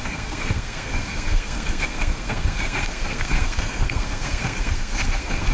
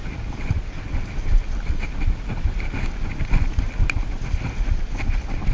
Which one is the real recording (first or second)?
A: second